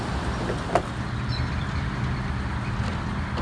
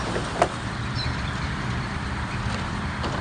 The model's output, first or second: second